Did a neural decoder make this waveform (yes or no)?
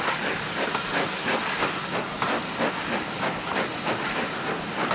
no